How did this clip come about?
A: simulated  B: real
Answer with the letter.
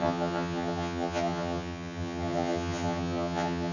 A